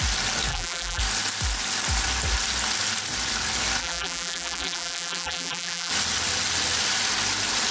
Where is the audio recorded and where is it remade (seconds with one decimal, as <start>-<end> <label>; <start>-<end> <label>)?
0.0-0.5 recorded; 0.5-1.0 remade; 1.0-3.8 recorded; 3.8-5.9 remade; 5.9-7.7 recorded